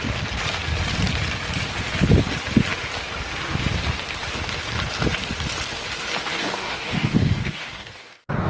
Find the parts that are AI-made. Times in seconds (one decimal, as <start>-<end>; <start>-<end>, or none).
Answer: 6.4-8.5